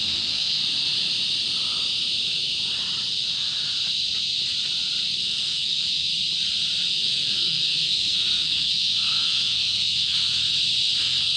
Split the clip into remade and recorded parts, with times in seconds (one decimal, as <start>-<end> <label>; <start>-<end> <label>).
0.0-0.6 remade; 0.6-5.2 recorded; 5.2-6.1 remade; 6.1-6.9 recorded; 6.9-10.4 remade; 10.4-11.0 recorded; 11.0-11.4 remade